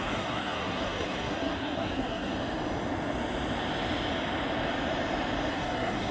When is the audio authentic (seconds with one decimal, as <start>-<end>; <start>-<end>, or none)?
2.3-5.5